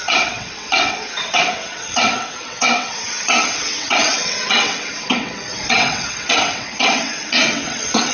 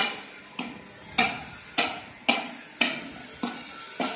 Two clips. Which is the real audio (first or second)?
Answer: second